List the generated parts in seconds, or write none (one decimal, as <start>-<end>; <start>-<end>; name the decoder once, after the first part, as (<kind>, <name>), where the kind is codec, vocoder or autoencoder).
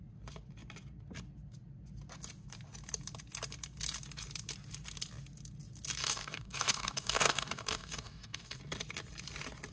6.0-8.6 (codec, DAC)